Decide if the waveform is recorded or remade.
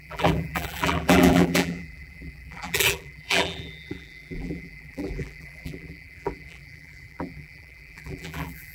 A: remade